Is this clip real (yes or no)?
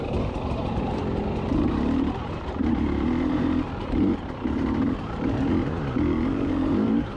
no